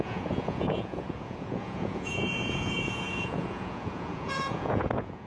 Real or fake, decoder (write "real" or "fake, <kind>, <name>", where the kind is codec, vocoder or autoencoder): fake, vocoder, Vocos